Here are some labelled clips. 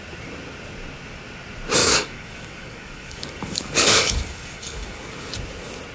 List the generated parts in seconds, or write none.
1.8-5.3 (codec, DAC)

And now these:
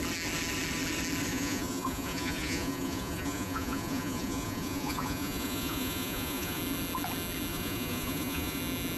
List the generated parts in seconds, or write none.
1.3-6.6 (vocoder, Vocos); 7.5-8.6

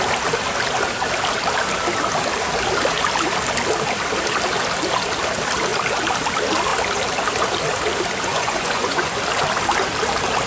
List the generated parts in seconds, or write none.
8.3-9.2 (vocoder, Vocos)

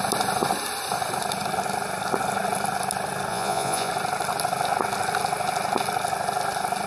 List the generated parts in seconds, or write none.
3.3-3.9 (vocoder, Vocos)

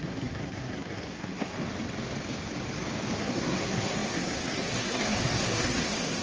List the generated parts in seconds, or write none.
0.0-1.6 (codec, SNAC); 3.2-6.2

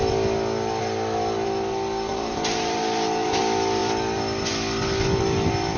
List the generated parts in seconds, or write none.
2.1-3.4 (vocoder, BigVGAN v2)

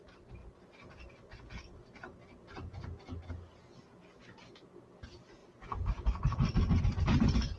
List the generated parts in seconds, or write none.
none

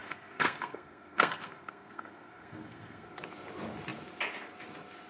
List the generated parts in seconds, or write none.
0.0-3.1 (codec, SNAC)